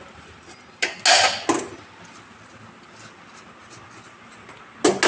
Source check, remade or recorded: recorded